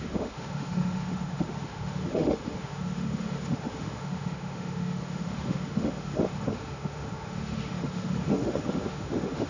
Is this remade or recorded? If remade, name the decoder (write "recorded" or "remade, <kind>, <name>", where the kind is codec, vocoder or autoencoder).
remade, autoencoder, DAC-VAE